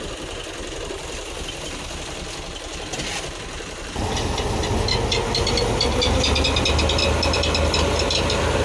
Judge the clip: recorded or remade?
recorded